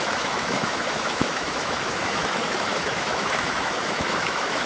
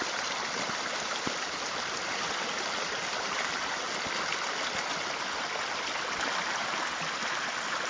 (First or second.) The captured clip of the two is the second